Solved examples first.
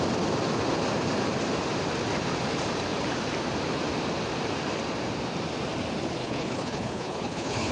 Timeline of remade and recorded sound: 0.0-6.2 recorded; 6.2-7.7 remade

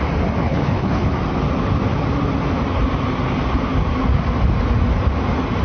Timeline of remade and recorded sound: 0.0-0.4 recorded; 0.4-1.1 remade; 1.1-5.6 recorded

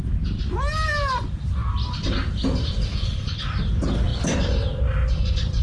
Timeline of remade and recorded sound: 0.0-2.9 recorded; 2.9-3.4 remade; 3.4-5.6 recorded

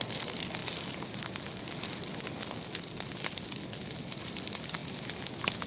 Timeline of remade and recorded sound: 0.0-5.7 recorded

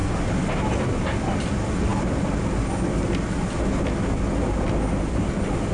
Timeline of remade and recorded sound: 0.0-5.7 recorded

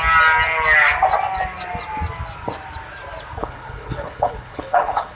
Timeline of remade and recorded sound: 0.0-3.4 recorded; 3.4-5.2 remade

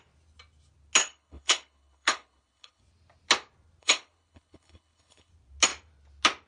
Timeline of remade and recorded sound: 0.0-1.0 recorded; 1.0-2.8 remade; 2.8-3.8 recorded; 3.8-5.3 remade; 5.3-6.5 recorded